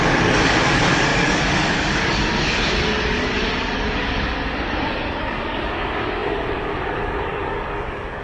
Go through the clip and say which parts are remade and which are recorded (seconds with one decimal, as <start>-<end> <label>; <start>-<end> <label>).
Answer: 0.0-8.2 remade